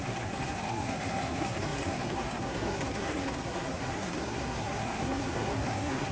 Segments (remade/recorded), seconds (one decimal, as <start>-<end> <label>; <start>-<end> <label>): 0.0-6.1 remade